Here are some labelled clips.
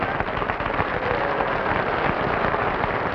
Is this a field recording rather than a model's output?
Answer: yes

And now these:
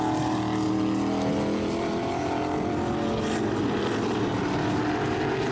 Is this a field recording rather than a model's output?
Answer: yes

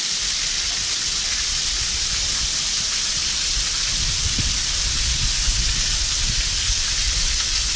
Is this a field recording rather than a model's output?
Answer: yes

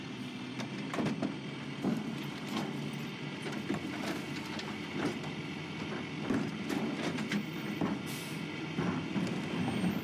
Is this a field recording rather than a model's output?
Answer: yes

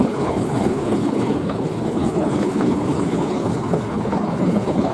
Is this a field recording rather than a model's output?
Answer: no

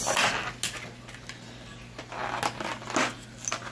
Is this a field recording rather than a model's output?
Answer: yes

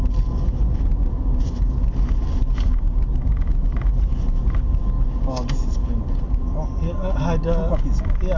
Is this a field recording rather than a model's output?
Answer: yes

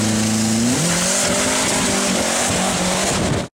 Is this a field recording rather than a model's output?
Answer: yes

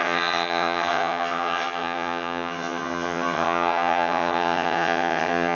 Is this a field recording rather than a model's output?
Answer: no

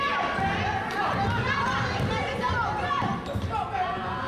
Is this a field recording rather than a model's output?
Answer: yes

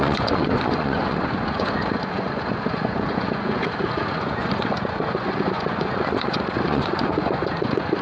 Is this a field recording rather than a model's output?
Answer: no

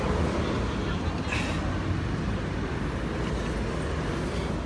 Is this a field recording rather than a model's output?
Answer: yes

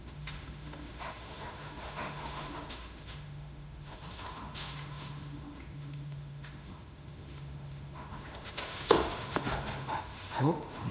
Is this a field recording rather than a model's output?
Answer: no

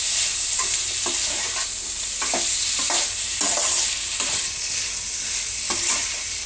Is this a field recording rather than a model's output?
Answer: yes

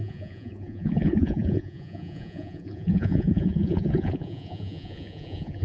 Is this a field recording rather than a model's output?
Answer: no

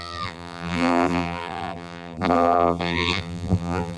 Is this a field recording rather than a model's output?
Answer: no